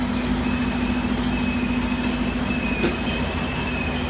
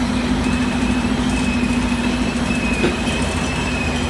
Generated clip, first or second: second